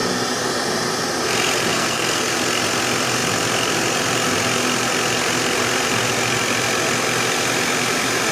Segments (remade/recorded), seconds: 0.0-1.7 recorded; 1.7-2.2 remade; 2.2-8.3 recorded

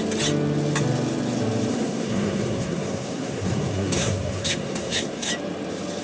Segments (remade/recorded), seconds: 0.0-1.7 recorded; 1.7-5.3 remade; 5.3-6.0 recorded